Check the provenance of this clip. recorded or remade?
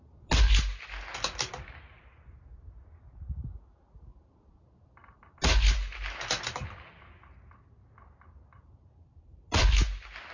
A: recorded